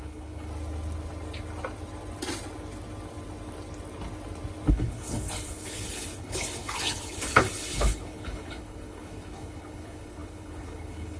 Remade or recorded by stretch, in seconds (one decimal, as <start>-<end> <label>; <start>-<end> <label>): 0.0-0.5 remade; 0.5-4.7 recorded; 4.7-11.2 remade